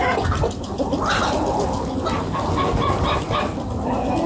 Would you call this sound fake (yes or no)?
no